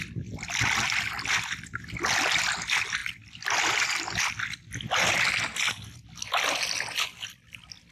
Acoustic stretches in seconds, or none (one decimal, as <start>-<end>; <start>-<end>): 0.0-7.9